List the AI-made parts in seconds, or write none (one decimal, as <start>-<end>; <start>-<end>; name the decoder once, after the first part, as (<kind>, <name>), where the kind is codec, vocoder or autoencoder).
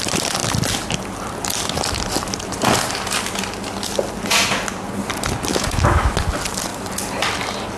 5.5-6.1 (autoencoder, DAC-VAE)